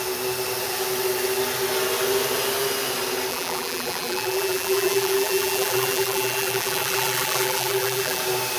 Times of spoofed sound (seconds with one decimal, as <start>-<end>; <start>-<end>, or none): 3.3-8.2